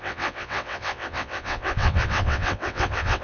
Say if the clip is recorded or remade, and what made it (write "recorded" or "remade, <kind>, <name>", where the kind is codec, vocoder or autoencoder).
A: remade, vocoder, WaveNeXt